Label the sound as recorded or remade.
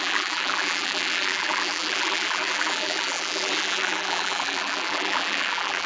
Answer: remade